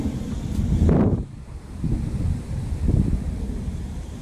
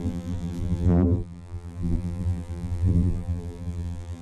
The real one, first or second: first